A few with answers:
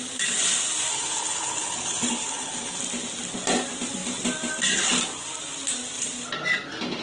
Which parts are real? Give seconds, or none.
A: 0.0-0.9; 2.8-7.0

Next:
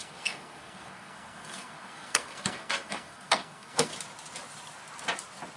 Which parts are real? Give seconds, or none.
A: 3.9-5.6

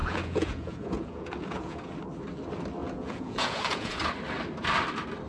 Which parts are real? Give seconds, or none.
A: 1.9-2.8; 4.0-5.3

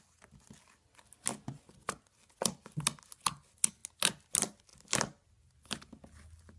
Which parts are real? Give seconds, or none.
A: 0.0-6.6

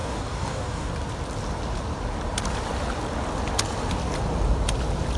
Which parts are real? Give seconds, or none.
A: 0.9-5.2